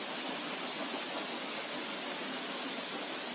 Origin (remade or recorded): recorded